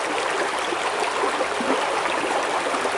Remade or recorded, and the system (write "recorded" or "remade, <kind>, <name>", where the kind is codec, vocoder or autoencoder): recorded